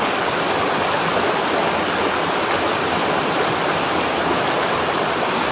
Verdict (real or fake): real